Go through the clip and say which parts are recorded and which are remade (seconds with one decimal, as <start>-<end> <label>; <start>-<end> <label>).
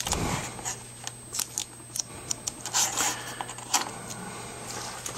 0.0-5.2 recorded